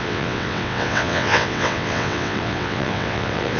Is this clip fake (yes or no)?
yes